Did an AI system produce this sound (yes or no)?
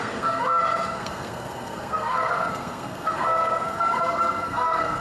yes